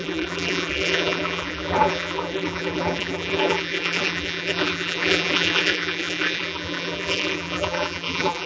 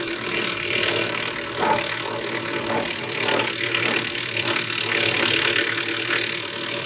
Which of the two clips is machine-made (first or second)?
first